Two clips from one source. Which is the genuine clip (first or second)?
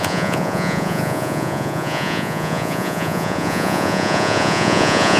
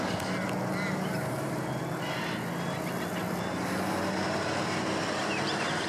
second